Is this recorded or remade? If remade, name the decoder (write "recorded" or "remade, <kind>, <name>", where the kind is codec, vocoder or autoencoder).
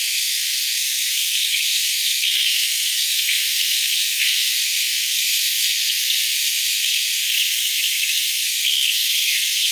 remade, codec, SNAC